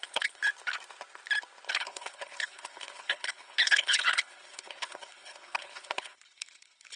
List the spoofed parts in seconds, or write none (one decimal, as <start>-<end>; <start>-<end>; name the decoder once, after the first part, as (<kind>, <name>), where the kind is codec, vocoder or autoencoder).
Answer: 0.0-0.5 (codec, HILCodec); 1.7-7.0